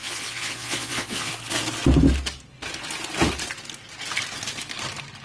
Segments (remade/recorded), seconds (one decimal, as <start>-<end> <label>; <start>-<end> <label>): 0.0-1.3 remade; 1.3-5.2 recorded